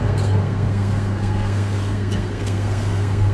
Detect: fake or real fake